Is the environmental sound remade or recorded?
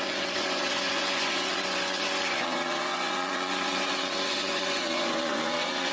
remade